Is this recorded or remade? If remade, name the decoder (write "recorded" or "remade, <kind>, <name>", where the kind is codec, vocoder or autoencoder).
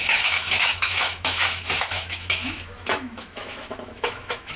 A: remade, autoencoder, DAC-VAE